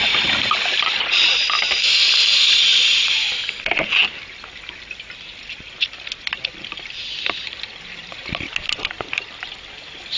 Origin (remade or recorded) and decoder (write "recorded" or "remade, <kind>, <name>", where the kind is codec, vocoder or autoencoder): recorded